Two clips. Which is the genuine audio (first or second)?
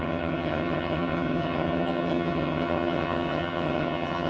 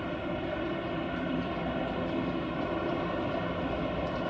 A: second